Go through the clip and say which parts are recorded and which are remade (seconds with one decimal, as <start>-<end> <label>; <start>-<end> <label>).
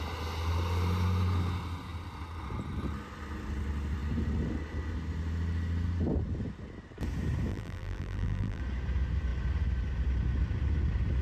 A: 0.0-7.5 recorded; 7.5-8.6 remade; 8.6-11.2 recorded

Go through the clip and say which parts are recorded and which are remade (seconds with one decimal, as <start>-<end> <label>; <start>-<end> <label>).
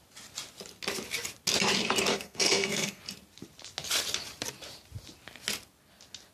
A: 0.0-2.1 recorded; 2.1-3.0 remade; 3.0-6.3 recorded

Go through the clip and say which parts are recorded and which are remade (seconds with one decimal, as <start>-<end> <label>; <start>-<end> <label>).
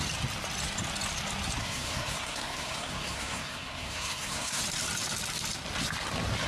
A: 0.0-1.6 recorded; 1.6-4.6 remade; 4.6-6.5 recorded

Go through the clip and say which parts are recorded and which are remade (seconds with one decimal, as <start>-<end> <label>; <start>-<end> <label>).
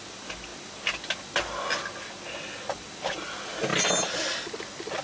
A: 0.0-5.0 recorded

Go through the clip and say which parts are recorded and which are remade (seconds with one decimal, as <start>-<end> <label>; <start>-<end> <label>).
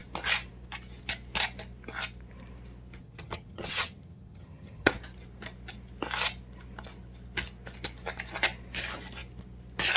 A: 0.0-3.0 recorded; 3.0-4.9 remade; 4.9-10.0 recorded